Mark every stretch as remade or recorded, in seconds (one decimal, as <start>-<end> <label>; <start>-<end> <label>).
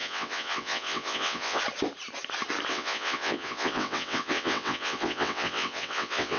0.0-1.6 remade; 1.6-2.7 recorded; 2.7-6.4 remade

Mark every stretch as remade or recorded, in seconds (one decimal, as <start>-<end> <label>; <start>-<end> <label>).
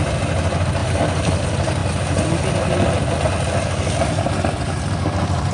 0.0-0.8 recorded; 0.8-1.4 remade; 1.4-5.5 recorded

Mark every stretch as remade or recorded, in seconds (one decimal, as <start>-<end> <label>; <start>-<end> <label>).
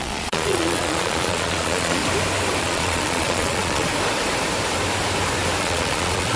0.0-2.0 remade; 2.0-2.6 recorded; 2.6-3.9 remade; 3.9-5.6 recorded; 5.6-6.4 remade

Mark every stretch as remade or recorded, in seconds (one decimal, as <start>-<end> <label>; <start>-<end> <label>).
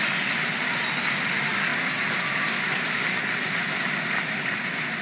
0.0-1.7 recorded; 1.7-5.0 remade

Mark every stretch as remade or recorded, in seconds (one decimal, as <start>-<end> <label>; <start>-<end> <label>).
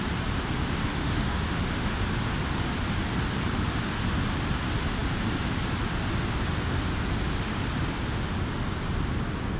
0.0-0.9 recorded; 0.9-2.0 remade; 2.0-9.6 recorded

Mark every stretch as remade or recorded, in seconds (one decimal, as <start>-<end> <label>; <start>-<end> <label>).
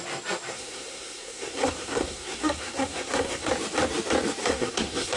0.0-0.5 recorded; 0.5-3.5 remade; 3.5-4.4 recorded; 4.4-5.2 remade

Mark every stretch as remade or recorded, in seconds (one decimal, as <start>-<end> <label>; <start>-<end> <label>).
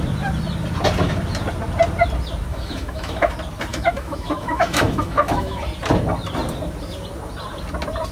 0.0-2.5 recorded; 2.5-3.3 remade; 3.3-3.7 recorded; 3.7-5.6 remade; 5.6-8.1 recorded